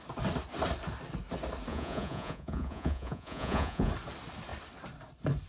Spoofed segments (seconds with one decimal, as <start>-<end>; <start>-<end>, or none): 1.7-3.9